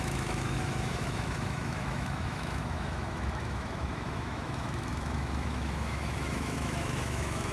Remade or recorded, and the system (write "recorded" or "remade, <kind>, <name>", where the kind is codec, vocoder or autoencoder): remade, autoencoder, DAC-VAE